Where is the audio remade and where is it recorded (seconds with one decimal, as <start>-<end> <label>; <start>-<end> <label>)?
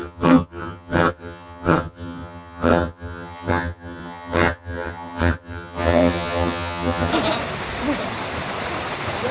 0.0-7.1 remade; 7.1-9.3 recorded